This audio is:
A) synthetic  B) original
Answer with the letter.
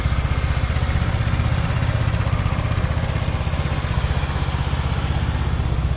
B